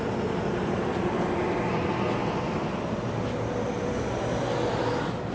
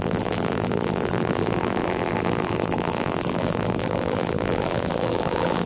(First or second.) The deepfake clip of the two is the second